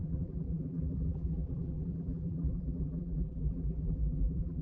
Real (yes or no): no